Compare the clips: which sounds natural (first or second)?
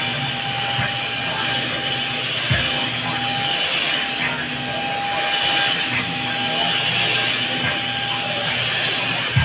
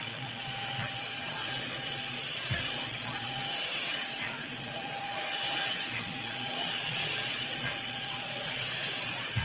first